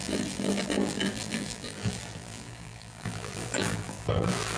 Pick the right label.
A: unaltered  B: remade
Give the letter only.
B